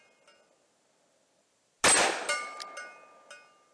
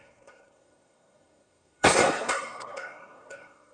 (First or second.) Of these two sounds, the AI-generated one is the second